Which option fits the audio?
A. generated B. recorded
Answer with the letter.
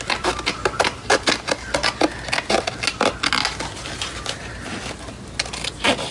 B